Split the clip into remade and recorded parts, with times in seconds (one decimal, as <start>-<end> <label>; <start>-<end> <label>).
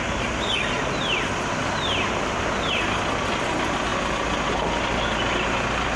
0.0-6.0 recorded